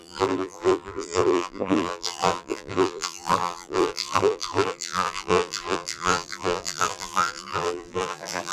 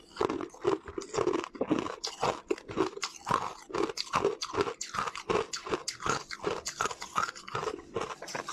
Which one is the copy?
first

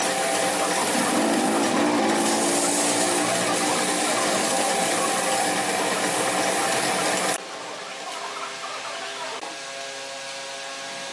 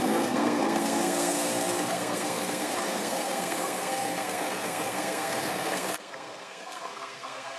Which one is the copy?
second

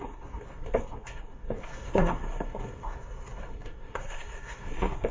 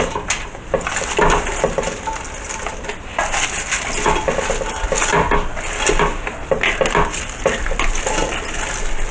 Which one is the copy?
first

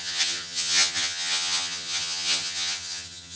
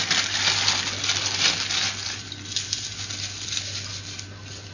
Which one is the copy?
first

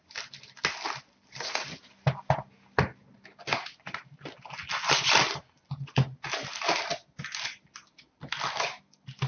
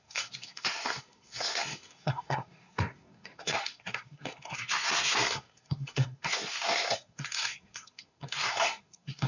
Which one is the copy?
second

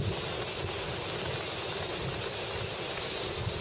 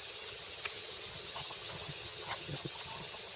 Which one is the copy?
second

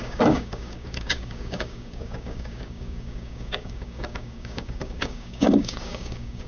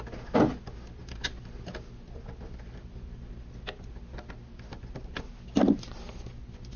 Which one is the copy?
first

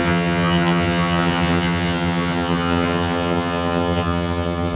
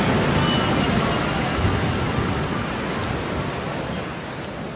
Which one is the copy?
first